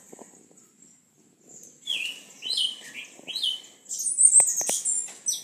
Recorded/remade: recorded